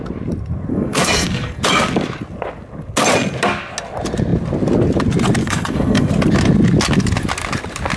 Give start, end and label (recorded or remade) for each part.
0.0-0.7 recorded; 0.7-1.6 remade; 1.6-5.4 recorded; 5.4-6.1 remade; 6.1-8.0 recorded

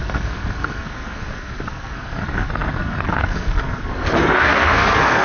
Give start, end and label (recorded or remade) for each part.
0.0-5.2 remade

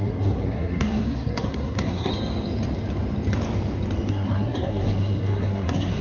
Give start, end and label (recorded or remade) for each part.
0.0-2.1 remade; 2.1-4.1 recorded; 4.1-6.0 remade